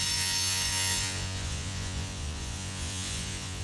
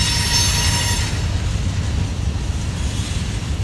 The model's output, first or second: first